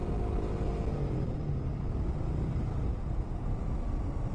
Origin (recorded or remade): recorded